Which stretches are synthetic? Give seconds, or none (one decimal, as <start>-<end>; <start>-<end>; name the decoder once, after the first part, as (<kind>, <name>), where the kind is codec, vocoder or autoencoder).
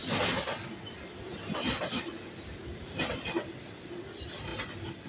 none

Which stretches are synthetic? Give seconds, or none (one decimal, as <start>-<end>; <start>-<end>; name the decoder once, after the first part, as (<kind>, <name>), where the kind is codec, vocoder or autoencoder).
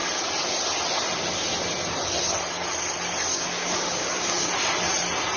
3.3-4.5 (codec, DAC)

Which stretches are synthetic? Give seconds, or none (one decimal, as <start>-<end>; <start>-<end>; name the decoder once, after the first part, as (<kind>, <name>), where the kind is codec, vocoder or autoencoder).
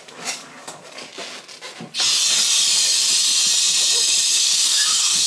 0.0-1.1 (codec, DAC); 4.3-5.3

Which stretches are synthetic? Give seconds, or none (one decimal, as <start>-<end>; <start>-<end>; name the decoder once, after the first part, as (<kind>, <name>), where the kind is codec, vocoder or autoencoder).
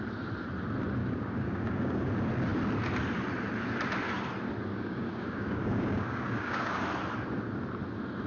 1.0-2.1 (codec, DAC); 4.7-6.8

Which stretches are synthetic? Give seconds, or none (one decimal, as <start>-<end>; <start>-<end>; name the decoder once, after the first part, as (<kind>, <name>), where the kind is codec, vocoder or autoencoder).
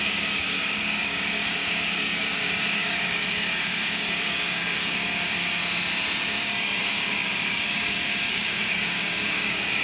0.0-5.6 (codec, DAC); 6.8-9.8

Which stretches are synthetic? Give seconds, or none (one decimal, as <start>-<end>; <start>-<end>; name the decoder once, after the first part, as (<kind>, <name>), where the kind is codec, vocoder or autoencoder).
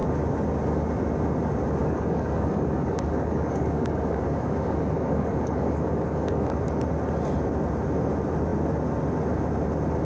1.8-6.6 (codec, DAC)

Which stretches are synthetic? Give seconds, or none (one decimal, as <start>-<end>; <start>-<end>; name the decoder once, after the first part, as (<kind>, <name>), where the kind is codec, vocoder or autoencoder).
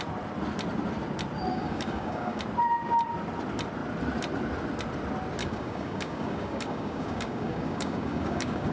1.5-2.4 (codec, DAC); 5.4-8.7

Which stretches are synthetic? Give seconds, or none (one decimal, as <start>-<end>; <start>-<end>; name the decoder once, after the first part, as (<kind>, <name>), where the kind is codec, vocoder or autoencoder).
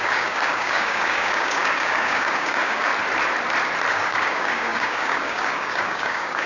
0.0-2.9 (codec, DAC); 3.9-6.5